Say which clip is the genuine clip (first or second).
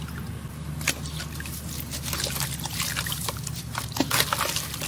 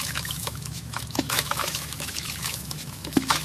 first